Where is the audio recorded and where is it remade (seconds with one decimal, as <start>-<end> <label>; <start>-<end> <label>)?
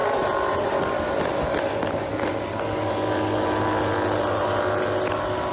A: 0.0-5.5 recorded